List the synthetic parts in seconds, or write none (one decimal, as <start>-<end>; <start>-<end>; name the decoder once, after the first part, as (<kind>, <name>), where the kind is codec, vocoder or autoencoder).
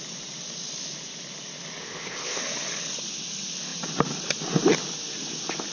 1.8-2.4 (codec, ZipCodec)